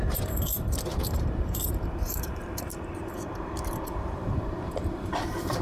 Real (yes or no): no